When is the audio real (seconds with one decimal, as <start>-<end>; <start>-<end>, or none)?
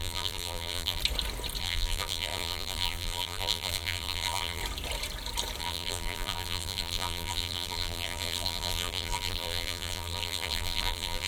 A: 1.0-1.6; 4.6-5.6